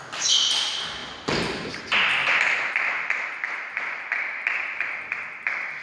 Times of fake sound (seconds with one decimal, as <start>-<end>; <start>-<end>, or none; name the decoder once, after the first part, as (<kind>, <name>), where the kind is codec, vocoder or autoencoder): none